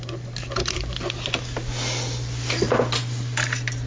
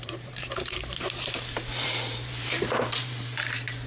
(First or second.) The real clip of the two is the first